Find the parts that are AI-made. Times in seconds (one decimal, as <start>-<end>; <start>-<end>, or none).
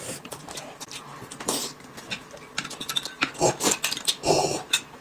0.0-1.1; 4.0-5.0